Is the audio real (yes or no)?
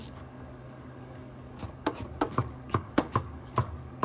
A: no